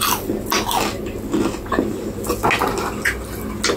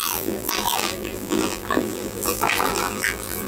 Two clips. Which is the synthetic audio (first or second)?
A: second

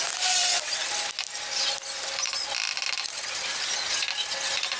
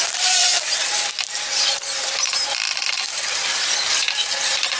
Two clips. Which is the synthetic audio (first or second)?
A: second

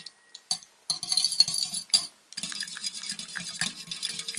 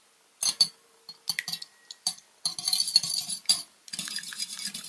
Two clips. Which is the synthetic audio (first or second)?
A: second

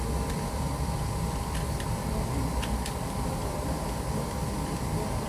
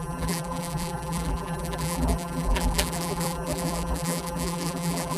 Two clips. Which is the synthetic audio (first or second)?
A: second